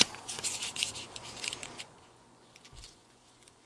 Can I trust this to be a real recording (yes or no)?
no